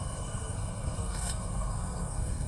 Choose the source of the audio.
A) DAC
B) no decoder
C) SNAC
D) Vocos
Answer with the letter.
C